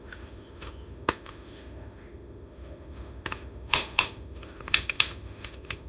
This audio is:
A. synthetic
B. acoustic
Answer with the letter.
A